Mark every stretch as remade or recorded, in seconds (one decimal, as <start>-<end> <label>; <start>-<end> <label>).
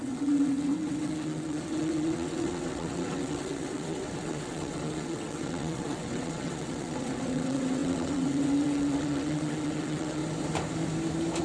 0.0-10.2 remade; 10.2-11.4 recorded